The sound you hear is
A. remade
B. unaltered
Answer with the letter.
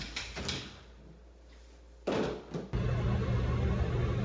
B